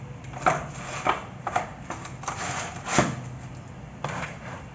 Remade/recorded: recorded